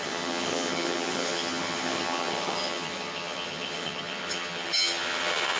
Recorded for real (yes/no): no